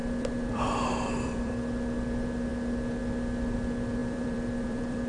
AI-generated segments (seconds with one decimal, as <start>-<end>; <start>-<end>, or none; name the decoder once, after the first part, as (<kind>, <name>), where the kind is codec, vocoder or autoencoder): 0.0-1.5 (vocoder, BigVGAN v2); 4.0-5.1